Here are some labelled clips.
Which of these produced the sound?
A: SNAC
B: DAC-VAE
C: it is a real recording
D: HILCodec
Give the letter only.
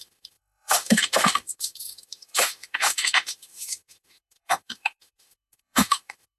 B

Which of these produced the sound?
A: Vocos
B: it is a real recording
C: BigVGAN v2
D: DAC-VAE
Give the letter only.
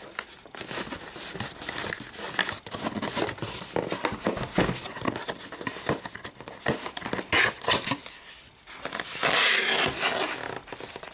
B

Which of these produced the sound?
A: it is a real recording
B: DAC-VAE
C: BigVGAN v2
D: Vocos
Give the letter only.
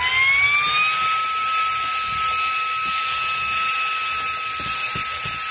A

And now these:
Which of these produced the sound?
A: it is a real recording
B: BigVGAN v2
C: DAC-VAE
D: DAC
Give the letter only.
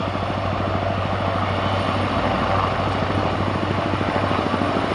A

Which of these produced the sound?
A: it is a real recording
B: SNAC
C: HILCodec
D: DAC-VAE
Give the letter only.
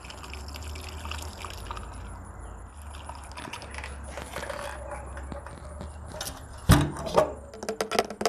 A